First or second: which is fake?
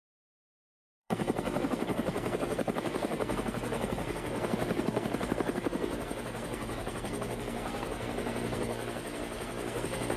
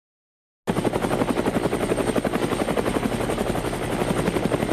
first